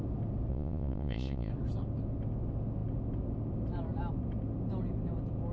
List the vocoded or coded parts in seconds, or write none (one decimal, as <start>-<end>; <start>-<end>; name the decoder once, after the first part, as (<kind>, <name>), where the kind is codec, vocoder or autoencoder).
0.5-1.5 (vocoder, Vocos)